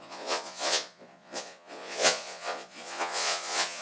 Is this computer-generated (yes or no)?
yes